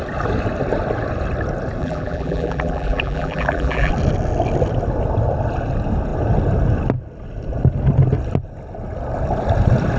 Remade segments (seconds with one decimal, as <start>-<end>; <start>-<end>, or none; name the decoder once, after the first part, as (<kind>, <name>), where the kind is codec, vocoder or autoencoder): 1.8-3.9 (vocoder, BigVGAN v2)